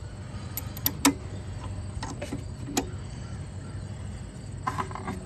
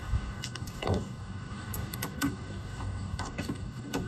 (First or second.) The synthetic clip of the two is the second